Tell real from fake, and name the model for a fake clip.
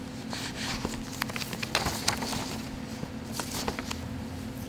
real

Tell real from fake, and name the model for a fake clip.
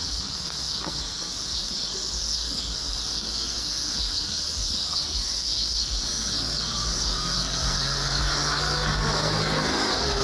fake, codec, SNAC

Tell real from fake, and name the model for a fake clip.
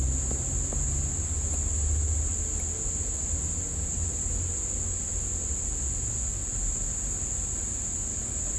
real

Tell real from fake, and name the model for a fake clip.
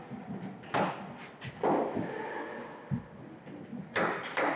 real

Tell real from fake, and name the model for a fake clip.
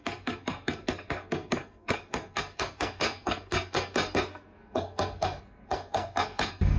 fake, codec, SNAC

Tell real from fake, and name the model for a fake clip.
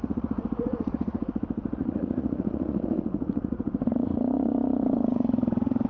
fake, vocoder, Vocos